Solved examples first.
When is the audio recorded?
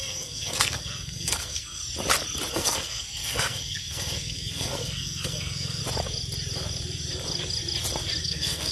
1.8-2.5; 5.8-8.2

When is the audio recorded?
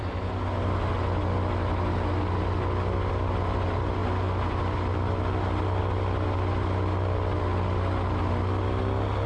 0.0-9.3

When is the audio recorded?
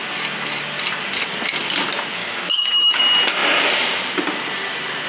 0.0-2.2; 3.0-5.1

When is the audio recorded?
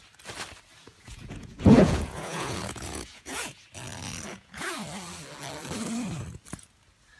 0.0-0.8; 3.6-4.3; 4.8-7.2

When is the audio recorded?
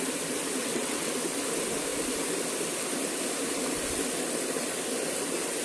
0.0-0.6; 1.1-5.6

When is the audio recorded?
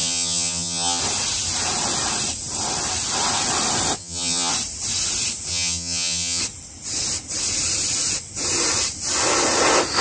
1.0-4.0; 4.5-5.5; 6.4-10.0